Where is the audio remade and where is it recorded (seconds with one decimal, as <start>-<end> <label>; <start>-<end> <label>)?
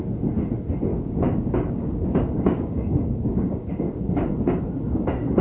0.0-0.9 recorded; 0.9-3.7 remade; 3.7-5.4 recorded